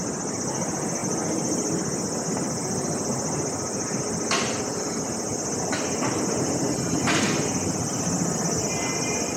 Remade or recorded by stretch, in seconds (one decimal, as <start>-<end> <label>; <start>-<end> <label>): 0.0-9.4 recorded